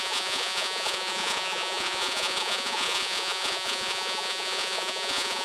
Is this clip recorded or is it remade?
remade